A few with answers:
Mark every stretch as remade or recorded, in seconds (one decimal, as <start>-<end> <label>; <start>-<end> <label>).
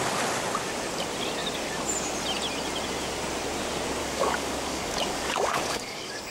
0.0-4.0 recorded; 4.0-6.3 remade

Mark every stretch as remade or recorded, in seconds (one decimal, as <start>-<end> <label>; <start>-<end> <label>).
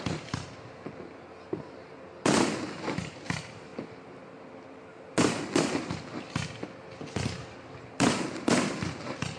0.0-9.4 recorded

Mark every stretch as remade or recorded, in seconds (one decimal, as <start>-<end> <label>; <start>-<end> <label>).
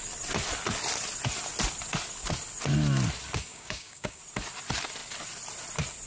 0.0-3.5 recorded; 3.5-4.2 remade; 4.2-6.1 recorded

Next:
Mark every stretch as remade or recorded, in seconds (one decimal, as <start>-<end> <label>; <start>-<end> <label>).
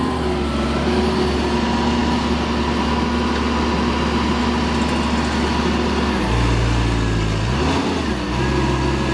0.0-9.1 recorded